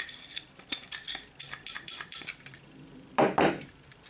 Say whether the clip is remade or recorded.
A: remade